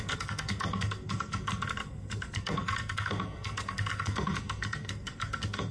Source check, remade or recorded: remade